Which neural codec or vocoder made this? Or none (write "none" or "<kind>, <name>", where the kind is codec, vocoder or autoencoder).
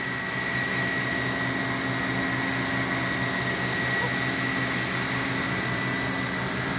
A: none